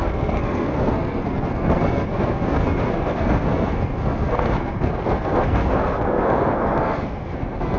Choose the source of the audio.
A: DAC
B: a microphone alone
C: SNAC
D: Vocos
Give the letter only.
C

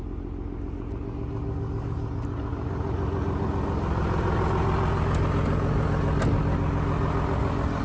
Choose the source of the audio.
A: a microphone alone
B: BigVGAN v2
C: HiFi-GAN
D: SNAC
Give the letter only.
A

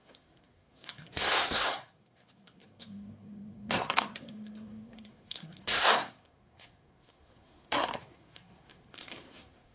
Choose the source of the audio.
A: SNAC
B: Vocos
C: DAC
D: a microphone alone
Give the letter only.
A